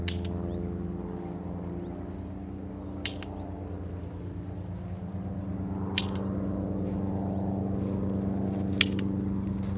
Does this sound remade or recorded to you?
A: recorded